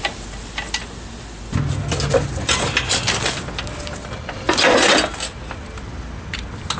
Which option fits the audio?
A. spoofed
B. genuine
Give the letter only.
B